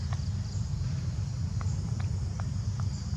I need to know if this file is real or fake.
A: real